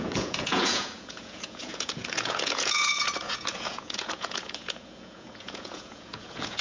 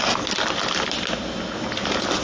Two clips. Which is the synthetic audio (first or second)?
first